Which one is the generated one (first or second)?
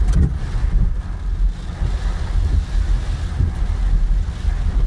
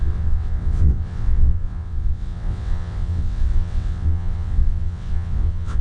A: second